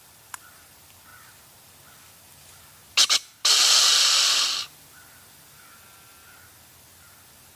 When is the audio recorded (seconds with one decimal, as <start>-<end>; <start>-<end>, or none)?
0.0-7.6